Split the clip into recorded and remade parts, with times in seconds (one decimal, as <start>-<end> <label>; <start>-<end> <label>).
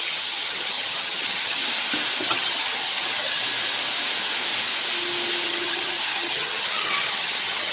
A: 0.0-1.6 remade; 1.6-2.2 recorded; 2.2-3.4 remade; 3.4-5.4 recorded; 5.4-7.7 remade